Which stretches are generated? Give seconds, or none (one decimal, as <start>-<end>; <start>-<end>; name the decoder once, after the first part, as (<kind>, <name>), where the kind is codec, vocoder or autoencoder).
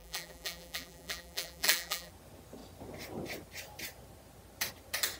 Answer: 0.0-2.1 (vocoder, BigVGAN v2)